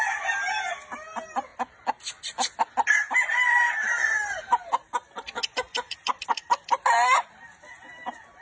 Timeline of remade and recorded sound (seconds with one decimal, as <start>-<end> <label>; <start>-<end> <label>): 0.0-8.4 recorded